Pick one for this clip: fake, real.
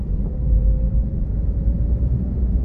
fake